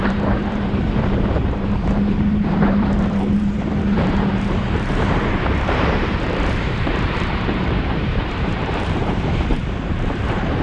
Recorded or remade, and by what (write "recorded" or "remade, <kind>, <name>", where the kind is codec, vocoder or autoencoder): remade, vocoder, BigVGAN v2